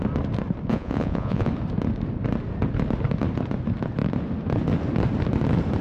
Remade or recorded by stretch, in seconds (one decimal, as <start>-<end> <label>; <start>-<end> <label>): 0.0-0.7 recorded; 0.7-1.5 remade; 1.5-5.8 recorded